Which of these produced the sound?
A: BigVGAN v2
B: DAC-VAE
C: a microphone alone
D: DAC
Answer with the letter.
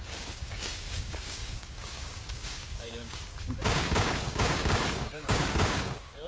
D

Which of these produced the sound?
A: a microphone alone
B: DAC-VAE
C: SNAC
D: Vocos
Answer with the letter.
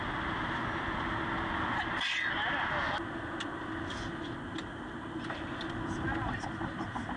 A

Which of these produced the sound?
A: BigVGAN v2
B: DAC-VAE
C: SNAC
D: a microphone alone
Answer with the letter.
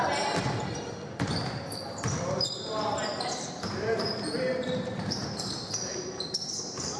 A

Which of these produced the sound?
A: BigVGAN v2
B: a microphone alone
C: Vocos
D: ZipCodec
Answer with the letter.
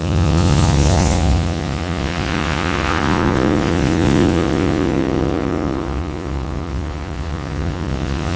C